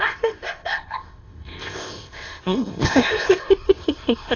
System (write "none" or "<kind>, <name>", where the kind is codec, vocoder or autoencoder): codec, ZipCodec